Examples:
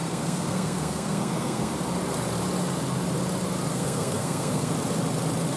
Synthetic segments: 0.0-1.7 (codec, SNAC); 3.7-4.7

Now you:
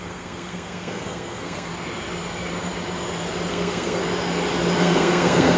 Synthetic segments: 0.0-1.7 (codec, SNAC); 3.5-4.0; 4.8-5.6

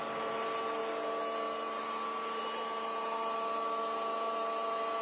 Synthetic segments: none

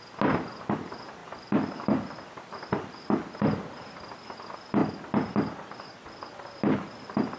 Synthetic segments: none

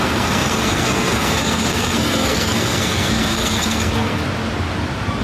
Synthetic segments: 0.0-4.2 (codec, SNAC)

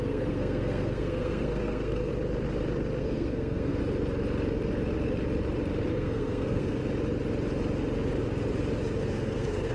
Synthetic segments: 0.0-2.1 (codec, SNAC); 3.0-3.8; 5.9-6.8; 9.1-9.7

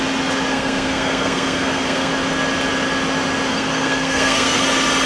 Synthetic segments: 0.5-2.1 (codec, SNAC); 3.5-4.6